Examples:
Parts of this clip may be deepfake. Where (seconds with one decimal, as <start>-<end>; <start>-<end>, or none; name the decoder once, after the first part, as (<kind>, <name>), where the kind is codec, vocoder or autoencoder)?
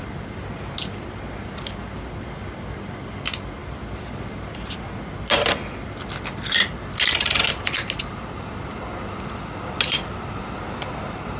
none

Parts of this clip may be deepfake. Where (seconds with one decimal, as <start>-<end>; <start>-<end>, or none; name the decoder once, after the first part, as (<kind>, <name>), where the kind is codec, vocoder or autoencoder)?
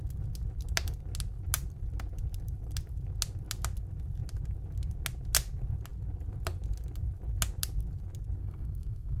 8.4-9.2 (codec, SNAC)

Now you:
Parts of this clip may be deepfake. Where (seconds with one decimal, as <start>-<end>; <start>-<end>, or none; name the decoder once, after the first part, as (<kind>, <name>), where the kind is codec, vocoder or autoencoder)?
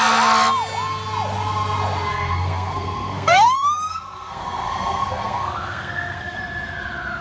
2.1-6.4 (codec, SNAC)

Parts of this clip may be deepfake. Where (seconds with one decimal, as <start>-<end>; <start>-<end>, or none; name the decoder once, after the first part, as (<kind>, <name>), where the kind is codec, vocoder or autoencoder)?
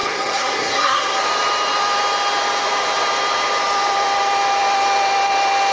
0.0-1.2 (codec, SNAC)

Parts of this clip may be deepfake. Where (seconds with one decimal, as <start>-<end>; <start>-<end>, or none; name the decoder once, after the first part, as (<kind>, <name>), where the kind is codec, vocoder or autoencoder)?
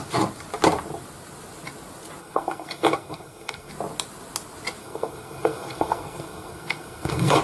2.2-3.7 (codec, SNAC); 4.8-7.4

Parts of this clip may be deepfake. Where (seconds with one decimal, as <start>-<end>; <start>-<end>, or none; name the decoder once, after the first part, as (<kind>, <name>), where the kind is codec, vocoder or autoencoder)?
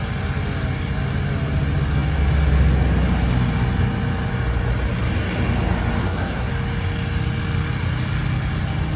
6.0-6.5 (codec, SNAC)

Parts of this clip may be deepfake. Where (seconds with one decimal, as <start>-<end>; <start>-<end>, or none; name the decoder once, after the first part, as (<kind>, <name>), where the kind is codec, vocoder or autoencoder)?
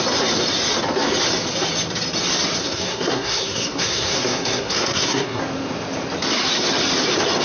2.6-5.4 (codec, SNAC)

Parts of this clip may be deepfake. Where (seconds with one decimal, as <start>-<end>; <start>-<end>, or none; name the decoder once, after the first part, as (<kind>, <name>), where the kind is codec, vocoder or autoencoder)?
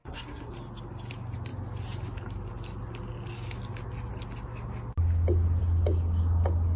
0.0-0.5 (codec, SNAC)